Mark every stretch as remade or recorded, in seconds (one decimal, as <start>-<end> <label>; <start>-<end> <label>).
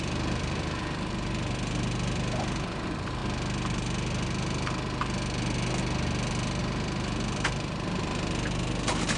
0.0-3.2 remade; 3.2-6.6 recorded; 6.6-8.1 remade; 8.1-9.2 recorded